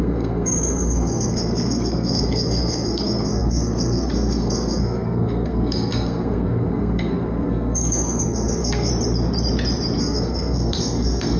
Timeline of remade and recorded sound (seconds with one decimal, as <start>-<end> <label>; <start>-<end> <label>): 0.0-8.9 remade; 8.9-10.0 recorded; 10.0-11.4 remade